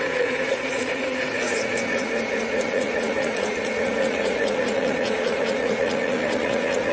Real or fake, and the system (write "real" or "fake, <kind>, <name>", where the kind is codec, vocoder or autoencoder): fake, vocoder, Vocos